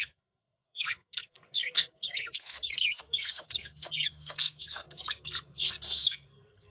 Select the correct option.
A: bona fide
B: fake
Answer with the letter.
B